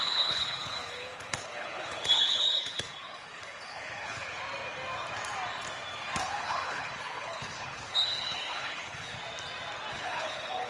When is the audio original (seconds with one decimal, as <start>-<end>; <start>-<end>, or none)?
4.4-6.2; 9.2-9.9